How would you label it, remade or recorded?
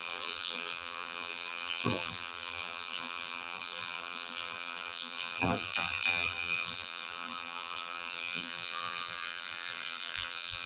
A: remade